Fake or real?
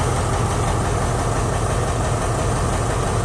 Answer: real